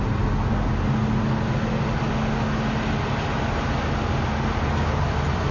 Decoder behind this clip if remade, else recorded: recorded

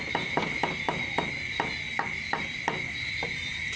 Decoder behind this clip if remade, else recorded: recorded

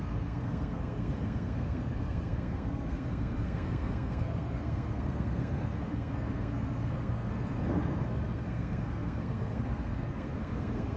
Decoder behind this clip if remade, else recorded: remade, codec, SNAC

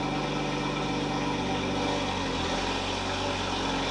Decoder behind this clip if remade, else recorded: recorded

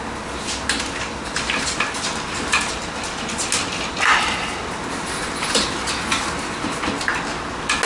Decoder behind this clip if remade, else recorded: recorded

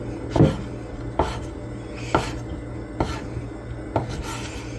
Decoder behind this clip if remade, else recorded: recorded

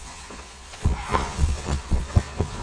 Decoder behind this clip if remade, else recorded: remade, vocoder, Vocos